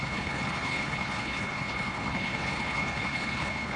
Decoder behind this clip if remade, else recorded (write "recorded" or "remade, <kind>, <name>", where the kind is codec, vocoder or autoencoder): remade, codec, HILCodec